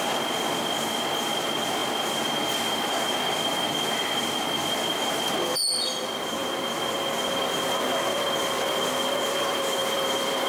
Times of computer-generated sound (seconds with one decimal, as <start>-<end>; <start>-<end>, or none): 1.8-5.6; 6.4-7.4; 9.8-10.5